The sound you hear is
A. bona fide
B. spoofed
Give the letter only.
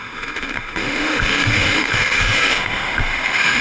B